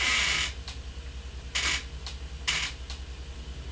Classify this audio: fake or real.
real